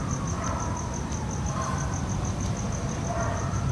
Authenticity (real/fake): real